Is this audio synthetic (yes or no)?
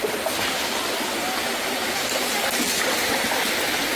no